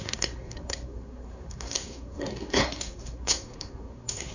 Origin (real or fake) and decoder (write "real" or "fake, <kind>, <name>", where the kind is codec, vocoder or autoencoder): fake, codec, SNAC